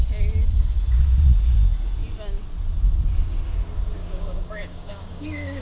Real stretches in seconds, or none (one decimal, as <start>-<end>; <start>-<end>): 0.0-4.0